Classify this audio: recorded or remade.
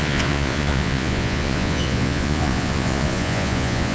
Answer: remade